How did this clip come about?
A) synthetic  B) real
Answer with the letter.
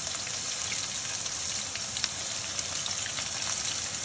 B